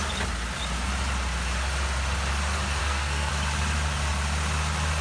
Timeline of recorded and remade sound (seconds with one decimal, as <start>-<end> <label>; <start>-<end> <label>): 0.0-2.8 recorded; 2.8-3.3 remade; 3.3-5.0 recorded